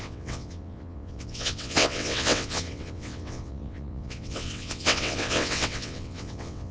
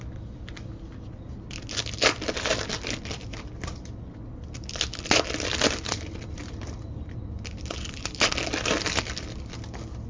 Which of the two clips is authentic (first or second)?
second